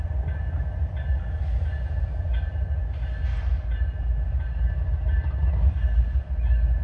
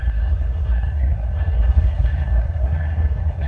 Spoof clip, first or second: second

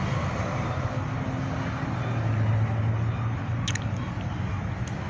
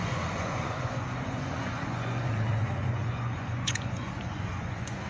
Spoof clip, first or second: second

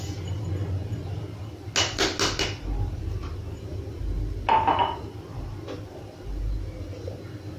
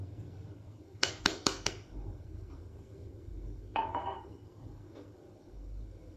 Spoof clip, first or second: second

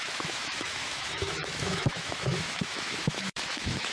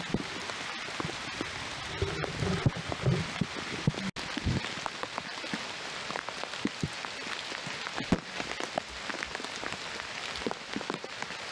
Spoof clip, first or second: first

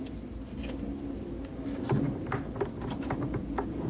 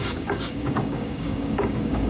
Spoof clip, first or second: second